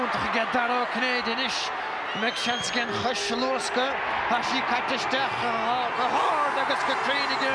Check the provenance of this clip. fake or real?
real